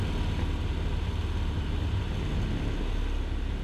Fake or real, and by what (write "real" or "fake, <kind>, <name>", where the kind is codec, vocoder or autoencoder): real